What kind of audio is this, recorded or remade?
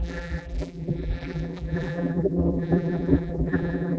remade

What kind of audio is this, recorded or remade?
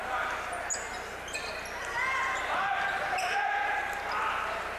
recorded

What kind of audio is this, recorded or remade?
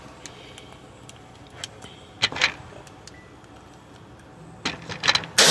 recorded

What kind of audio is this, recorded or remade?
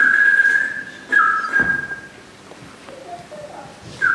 recorded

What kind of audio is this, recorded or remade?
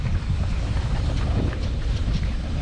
remade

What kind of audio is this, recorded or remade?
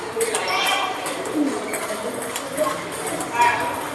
remade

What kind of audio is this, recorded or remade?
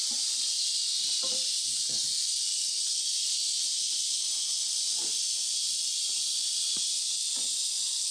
remade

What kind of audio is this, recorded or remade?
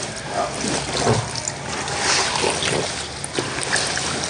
recorded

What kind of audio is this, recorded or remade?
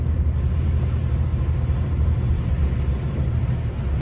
recorded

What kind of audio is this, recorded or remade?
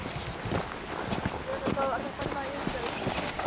recorded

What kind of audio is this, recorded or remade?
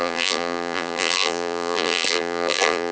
remade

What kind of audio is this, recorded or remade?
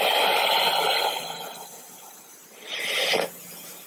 recorded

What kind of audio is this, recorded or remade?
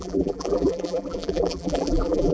remade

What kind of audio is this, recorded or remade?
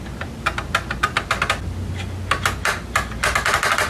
recorded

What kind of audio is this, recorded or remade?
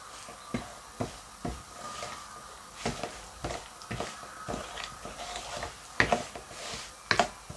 recorded